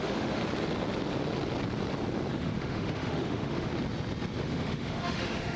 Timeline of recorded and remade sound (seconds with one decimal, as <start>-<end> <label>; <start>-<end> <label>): 0.0-0.4 remade; 0.4-2.3 recorded; 2.3-3.7 remade; 3.7-4.4 recorded; 4.4-5.6 remade